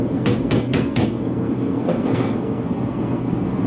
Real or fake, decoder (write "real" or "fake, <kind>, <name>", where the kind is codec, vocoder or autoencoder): fake, codec, SNAC